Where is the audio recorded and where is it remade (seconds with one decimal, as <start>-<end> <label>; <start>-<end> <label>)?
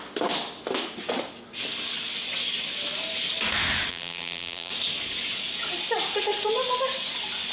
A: 0.0-3.9 recorded; 3.9-4.7 remade; 4.7-7.5 recorded